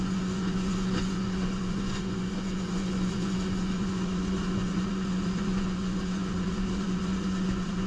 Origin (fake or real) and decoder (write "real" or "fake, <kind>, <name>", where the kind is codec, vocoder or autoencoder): fake, vocoder, Vocos